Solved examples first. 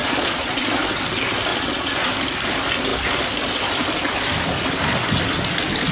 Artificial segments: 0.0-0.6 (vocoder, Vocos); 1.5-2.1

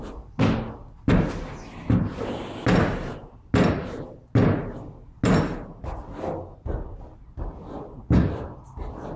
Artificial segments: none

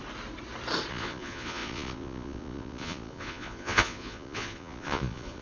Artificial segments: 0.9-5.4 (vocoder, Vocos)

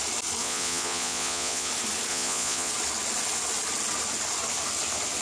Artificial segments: 0.4-1.7 (vocoder, Vocos); 2.1-2.7

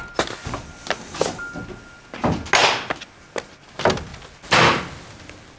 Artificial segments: none